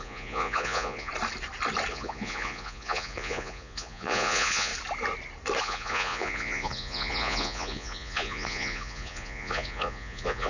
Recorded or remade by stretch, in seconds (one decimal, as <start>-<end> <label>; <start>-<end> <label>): 0.0-1.1 remade; 1.1-1.9 recorded; 1.9-4.7 remade; 4.7-5.6 recorded; 5.6-10.5 remade